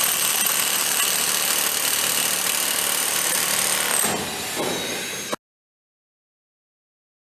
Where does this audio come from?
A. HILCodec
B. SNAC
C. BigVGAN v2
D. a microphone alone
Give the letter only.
D